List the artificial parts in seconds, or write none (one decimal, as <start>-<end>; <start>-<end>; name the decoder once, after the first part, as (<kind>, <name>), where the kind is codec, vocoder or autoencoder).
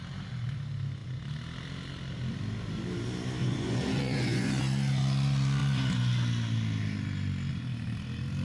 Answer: 3.4-4.6 (vocoder, Vocos)